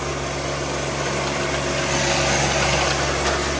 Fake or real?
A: real